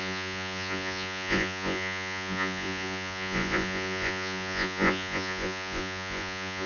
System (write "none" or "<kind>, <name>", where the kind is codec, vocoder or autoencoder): vocoder, Vocos